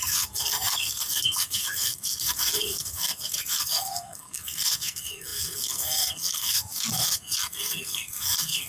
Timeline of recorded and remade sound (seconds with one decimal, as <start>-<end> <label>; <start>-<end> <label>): 0.0-8.7 remade